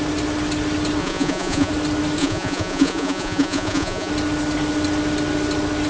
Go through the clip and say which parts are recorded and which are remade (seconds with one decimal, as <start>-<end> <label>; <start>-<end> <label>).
0.0-1.0 recorded; 1.0-1.7 remade; 1.7-2.2 recorded; 2.2-4.1 remade; 4.1-5.9 recorded